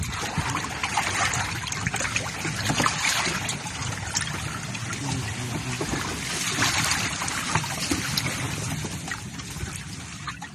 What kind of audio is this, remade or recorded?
recorded